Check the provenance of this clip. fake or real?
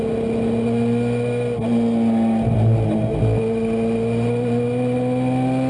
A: real